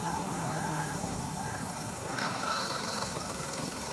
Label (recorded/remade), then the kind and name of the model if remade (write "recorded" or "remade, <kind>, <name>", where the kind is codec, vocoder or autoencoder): remade, codec, SNAC